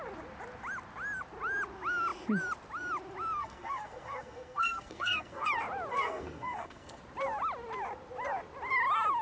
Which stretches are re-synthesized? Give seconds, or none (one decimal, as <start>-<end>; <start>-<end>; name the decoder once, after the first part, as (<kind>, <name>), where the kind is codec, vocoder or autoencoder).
3.4-5.5 (codec, SNAC); 5.9-7.0